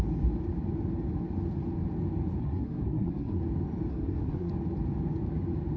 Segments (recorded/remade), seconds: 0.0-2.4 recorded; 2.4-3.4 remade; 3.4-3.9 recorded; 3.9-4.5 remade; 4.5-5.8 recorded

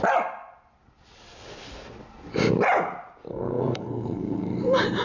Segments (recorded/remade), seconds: 0.0-3.3 recorded; 3.3-4.6 remade; 4.6-5.0 recorded

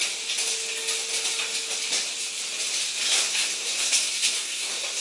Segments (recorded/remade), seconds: 0.0-3.0 recorded; 3.0-5.0 remade

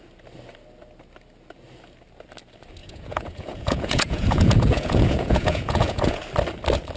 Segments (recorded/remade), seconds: 0.0-2.8 recorded; 2.8-6.2 remade; 6.2-7.0 recorded

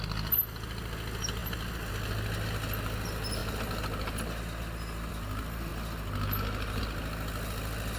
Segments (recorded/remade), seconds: 0.0-8.0 recorded

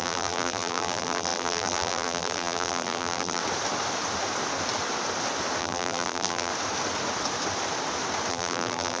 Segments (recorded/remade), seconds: 0.0-3.4 remade; 3.4-5.6 recorded; 5.6-6.5 remade; 6.5-8.3 recorded; 8.3-9.0 remade

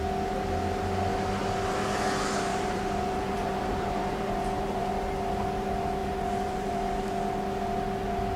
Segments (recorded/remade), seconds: 0.0-2.5 recorded; 2.5-4.9 remade; 4.9-6.0 recorded; 6.0-7.0 remade; 7.0-8.4 recorded